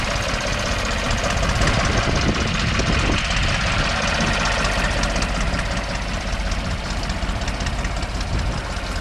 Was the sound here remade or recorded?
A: recorded